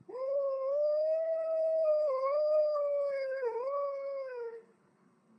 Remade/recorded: remade